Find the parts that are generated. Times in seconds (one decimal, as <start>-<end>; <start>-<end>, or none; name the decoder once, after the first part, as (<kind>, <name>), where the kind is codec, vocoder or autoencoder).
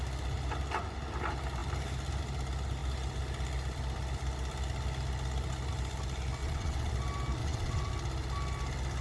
6.4-6.9 (vocoder, WaveNeXt); 7.4-7.9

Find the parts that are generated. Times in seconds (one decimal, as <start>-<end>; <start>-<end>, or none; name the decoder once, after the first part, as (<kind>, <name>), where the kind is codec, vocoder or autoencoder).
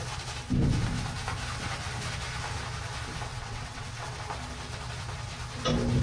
3.3-4.1 (vocoder, WaveNeXt)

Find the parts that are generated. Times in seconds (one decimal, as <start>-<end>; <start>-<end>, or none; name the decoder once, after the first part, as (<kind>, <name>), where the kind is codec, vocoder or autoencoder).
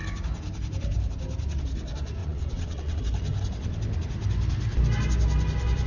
2.2-3.0 (vocoder, WaveNeXt)